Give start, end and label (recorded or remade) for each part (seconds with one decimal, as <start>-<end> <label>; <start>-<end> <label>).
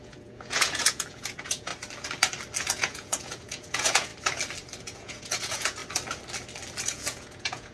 0.0-1.7 remade; 1.7-2.6 recorded; 2.6-4.1 remade; 4.1-4.8 recorded; 4.8-5.8 remade; 5.8-6.8 recorded; 6.8-7.7 remade